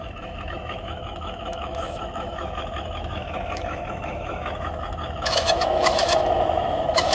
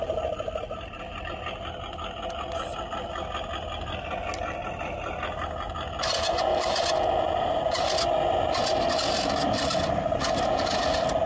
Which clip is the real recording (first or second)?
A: second